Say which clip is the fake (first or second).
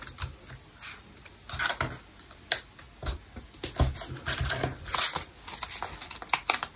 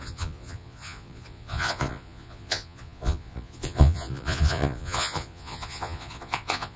second